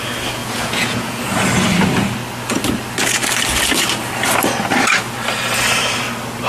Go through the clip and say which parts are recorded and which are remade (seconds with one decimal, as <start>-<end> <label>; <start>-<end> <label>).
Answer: 0.0-0.4 recorded; 0.4-1.2 remade; 1.2-6.5 recorded